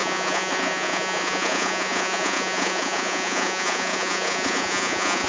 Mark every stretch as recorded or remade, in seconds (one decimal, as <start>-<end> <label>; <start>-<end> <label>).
0.0-5.3 remade